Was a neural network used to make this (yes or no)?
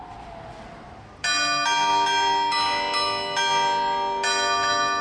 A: no